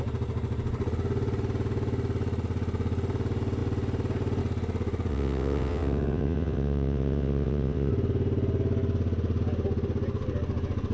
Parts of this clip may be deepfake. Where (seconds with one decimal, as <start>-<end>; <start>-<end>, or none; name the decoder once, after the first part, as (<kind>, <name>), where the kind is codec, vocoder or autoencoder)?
5.1-7.9 (vocoder, WaveNeXt)